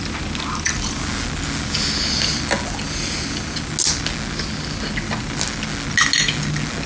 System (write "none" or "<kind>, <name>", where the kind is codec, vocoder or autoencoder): none